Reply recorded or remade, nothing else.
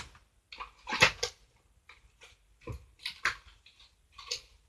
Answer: recorded